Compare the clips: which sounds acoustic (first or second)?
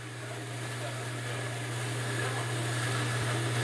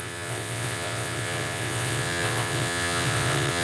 first